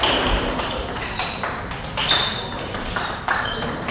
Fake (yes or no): yes